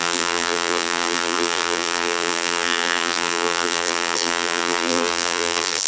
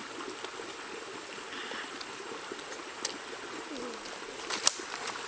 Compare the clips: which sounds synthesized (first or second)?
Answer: first